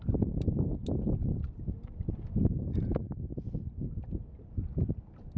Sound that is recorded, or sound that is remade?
recorded